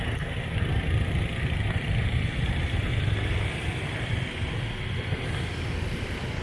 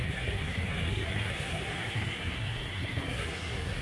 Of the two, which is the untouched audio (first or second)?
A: first